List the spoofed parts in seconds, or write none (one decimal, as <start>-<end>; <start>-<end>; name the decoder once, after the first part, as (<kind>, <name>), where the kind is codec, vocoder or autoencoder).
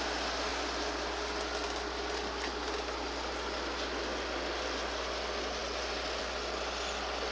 none